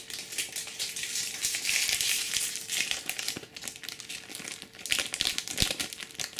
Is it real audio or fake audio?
real